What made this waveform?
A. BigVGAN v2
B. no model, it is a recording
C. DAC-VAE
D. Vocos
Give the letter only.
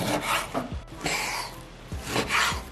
B